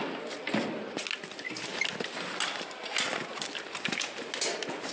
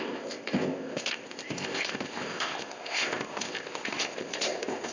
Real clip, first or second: first